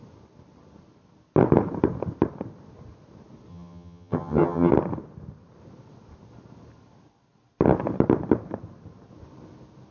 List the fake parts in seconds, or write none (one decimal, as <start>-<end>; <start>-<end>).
3.5-4.7